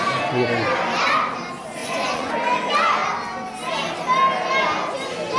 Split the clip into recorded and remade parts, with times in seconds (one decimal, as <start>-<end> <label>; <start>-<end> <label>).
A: 0.0-1.8 recorded; 1.8-2.3 remade; 2.3-5.4 recorded